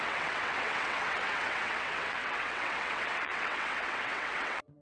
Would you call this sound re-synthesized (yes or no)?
yes